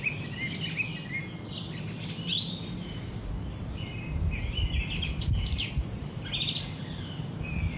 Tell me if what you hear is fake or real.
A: real